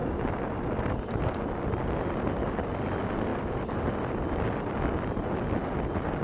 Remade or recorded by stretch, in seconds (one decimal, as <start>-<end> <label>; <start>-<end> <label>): 0.0-6.2 recorded